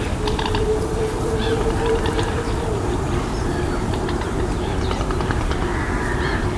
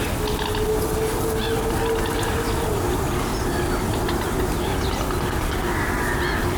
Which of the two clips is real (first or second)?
second